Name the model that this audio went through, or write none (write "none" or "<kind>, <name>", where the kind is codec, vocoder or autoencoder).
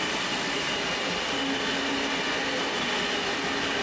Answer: none